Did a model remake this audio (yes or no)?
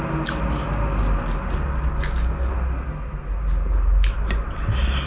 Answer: no